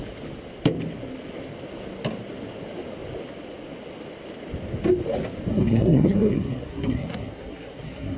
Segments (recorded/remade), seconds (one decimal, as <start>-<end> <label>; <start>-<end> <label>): 0.0-5.5 recorded; 5.5-8.2 remade